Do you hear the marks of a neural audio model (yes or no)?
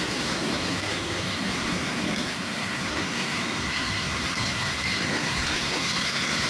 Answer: yes